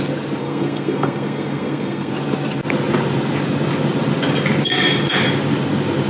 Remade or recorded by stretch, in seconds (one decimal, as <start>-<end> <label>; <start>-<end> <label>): 0.0-0.4 recorded; 0.4-2.1 remade; 2.1-6.1 recorded